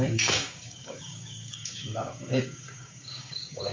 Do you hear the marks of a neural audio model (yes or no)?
yes